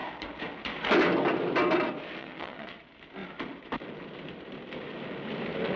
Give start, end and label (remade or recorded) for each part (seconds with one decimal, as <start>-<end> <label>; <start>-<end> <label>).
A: 0.0-2.2 recorded; 2.2-2.8 remade; 2.8-5.8 recorded